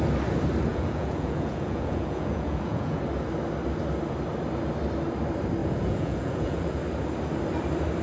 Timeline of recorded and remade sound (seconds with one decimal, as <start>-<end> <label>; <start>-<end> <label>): 0.0-0.7 recorded; 0.7-3.0 remade; 3.0-5.6 recorded; 5.6-6.8 remade; 6.8-8.0 recorded